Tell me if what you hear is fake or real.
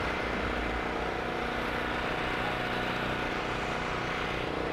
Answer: real